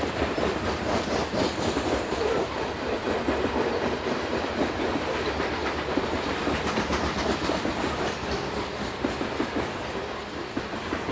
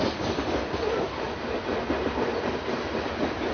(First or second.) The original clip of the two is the second